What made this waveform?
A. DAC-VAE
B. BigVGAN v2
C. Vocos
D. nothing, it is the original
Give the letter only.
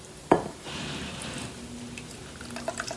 B